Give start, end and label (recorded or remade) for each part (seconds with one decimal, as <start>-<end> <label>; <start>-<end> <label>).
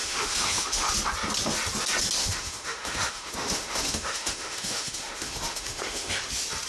0.0-0.9 remade; 0.9-2.2 recorded; 2.2-6.2 remade; 6.2-6.7 recorded